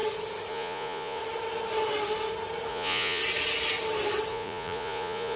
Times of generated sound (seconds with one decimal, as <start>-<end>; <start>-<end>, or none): 0.5-1.2; 2.7-3.2; 4.3-5.4